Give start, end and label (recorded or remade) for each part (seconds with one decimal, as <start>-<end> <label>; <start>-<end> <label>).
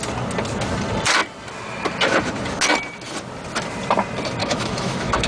0.0-4.4 recorded; 4.4-5.3 remade